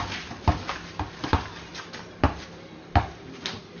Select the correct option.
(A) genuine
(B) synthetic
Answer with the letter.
A